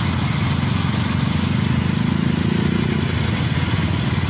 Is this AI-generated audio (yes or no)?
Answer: no